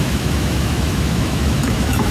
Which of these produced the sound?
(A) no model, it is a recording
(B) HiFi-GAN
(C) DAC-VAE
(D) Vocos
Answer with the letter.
C